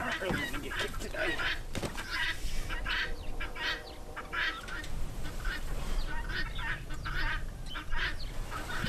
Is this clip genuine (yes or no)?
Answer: yes